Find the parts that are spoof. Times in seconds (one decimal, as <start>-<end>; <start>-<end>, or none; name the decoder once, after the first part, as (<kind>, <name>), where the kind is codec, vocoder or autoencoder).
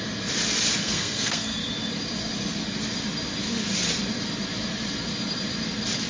0.8-1.7 (codec, SNAC)